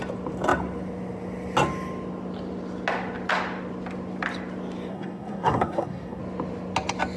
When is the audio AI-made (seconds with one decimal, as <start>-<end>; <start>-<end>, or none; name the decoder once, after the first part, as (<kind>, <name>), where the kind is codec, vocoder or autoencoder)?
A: 4.9-6.2 (codec, SNAC)